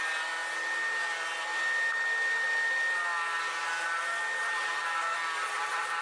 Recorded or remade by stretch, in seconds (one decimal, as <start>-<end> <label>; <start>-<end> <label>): 0.0-6.0 recorded

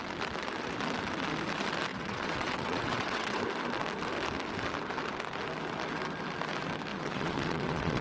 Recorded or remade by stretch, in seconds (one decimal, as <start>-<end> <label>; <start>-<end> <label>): 0.0-1.9 recorded; 1.9-3.4 remade; 3.4-6.9 recorded; 6.9-8.0 remade

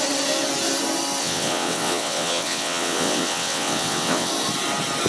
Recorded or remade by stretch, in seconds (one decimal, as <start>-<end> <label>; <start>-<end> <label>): 0.0-1.2 recorded; 1.2-4.3 remade; 4.3-5.1 recorded

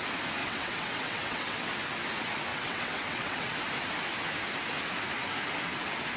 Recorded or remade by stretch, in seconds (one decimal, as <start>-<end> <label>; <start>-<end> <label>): 0.0-0.4 recorded; 0.4-1.7 remade; 1.7-2.5 recorded; 2.5-3.6 remade; 3.6-6.2 recorded

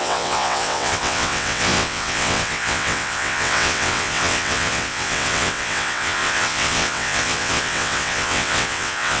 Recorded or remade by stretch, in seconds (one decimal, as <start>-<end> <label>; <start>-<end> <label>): 0.0-9.2 remade

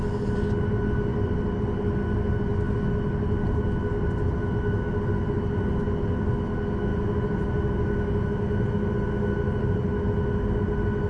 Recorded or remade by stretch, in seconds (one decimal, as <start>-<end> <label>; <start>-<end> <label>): 0.0-11.1 recorded